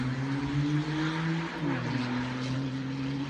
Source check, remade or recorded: recorded